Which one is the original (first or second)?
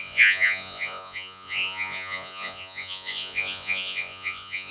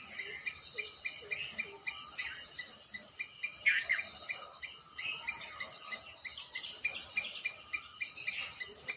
second